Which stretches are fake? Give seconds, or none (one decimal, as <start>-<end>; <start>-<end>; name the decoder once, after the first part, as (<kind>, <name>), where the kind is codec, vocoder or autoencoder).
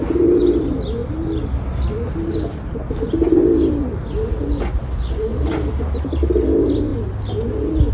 0.0-0.6 (vocoder, BigVGAN v2); 5.3-6.1